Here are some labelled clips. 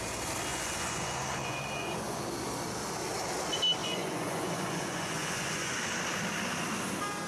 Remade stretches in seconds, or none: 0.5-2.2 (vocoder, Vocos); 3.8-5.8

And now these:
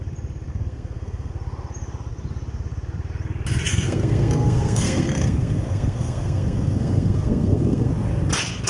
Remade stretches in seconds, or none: 0.5-1.3 (codec, SNAC); 3.7-7.9

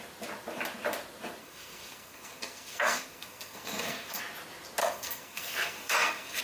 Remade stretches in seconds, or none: 1.4-4.2 (codec, SNAC); 4.8-6.4